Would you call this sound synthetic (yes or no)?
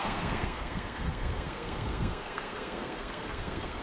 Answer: yes